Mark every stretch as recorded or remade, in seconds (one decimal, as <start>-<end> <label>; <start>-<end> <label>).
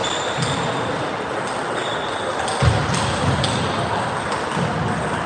0.0-5.3 recorded